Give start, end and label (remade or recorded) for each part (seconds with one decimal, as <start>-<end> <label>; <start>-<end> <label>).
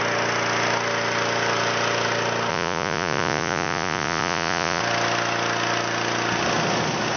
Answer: 0.0-2.5 recorded; 2.5-4.8 remade; 4.8-7.2 recorded